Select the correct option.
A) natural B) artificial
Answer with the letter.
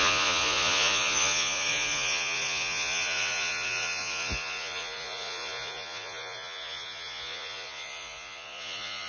B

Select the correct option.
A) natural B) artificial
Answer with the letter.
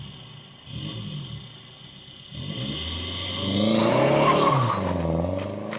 A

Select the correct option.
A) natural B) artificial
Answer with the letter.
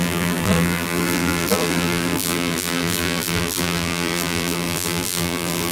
B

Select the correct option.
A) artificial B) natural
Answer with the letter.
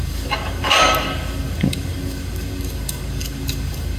A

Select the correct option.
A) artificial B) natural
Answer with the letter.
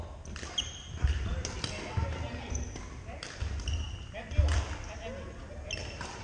B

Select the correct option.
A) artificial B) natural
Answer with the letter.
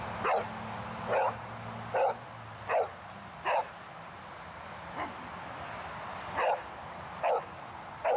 B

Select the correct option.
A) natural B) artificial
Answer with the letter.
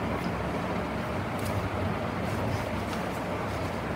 A